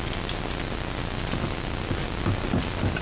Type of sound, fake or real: real